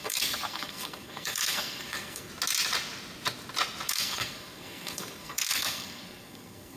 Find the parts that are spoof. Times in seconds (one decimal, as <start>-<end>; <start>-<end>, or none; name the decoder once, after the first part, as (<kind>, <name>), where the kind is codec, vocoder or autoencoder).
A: 0.0-2.3 (codec, SNAC); 3.9-6.8